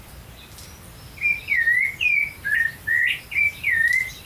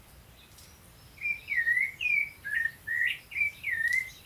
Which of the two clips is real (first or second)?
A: first